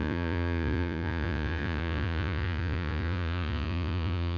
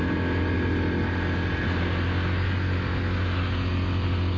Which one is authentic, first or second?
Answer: second